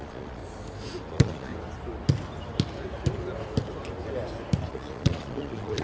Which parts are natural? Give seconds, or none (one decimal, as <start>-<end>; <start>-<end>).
0.4-1.1; 1.5-4.7